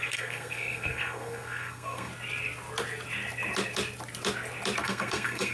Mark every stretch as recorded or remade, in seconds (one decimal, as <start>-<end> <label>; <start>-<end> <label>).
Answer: 0.0-2.1 remade; 2.1-4.8 recorded; 4.8-5.5 remade